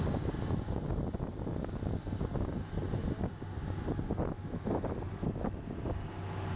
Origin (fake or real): real